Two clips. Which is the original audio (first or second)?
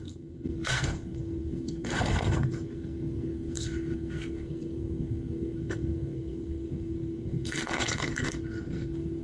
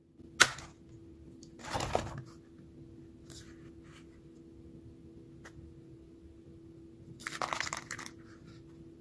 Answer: second